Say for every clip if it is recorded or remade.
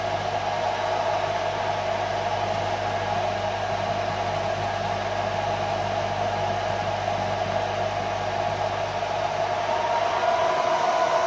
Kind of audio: recorded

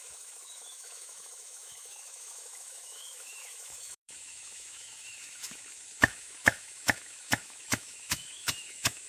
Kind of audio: remade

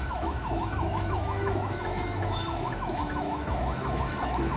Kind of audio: remade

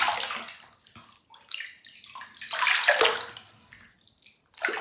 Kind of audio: recorded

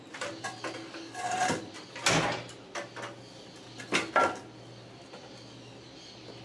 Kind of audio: recorded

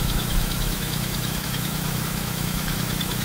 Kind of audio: remade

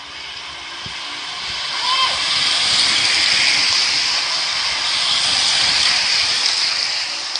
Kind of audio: recorded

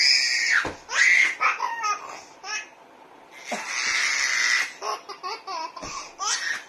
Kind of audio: recorded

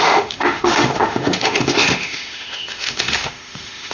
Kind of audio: remade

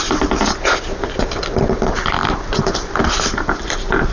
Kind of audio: recorded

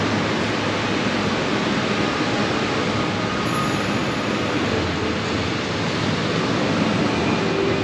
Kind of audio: recorded